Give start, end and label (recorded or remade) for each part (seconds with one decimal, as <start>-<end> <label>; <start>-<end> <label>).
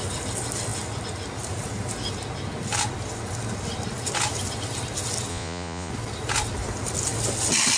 0.0-5.3 recorded; 5.3-5.9 remade; 5.9-7.8 recorded